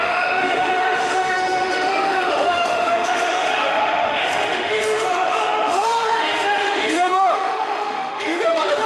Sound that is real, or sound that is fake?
fake